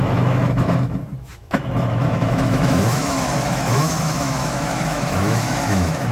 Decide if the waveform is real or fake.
fake